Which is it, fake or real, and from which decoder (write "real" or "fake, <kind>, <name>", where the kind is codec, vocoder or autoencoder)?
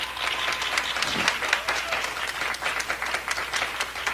real